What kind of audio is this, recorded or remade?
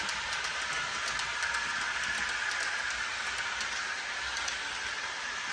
recorded